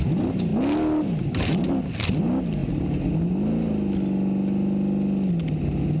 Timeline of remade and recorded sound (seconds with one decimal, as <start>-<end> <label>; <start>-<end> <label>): 0.0-6.0 recorded